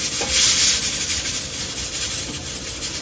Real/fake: real